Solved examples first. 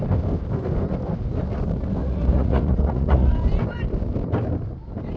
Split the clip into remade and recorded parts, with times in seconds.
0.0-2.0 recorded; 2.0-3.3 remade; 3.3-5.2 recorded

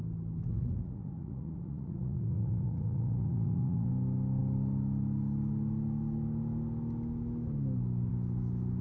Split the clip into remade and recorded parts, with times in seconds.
0.0-0.5 recorded; 0.5-3.9 remade; 3.9-8.8 recorded

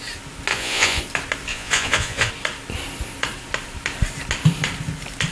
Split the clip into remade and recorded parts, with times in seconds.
0.0-0.5 recorded; 0.5-1.0 remade; 1.0-1.5 recorded; 1.5-2.3 remade; 2.3-5.3 recorded

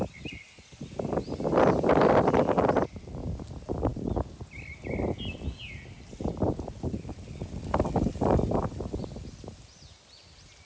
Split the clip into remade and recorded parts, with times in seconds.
0.0-10.7 recorded

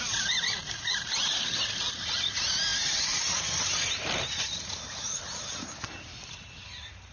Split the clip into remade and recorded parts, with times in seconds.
0.0-7.1 recorded

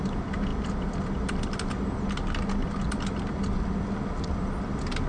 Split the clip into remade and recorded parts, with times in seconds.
0.0-5.1 recorded

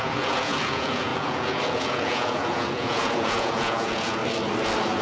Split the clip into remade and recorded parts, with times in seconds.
0.0-4.2 remade; 4.2-5.0 recorded

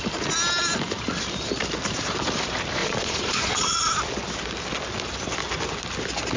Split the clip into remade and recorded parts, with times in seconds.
0.0-2.8 recorded; 2.8-3.9 remade; 3.9-6.4 recorded